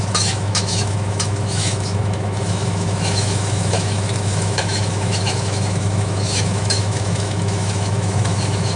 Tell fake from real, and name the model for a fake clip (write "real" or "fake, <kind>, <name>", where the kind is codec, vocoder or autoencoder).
fake, autoencoder, DAC-VAE